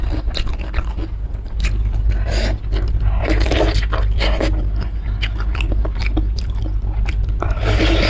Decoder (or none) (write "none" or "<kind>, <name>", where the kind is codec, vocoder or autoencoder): none